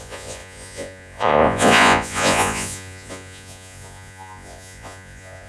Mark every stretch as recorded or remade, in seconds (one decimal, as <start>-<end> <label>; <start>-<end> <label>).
0.0-5.5 remade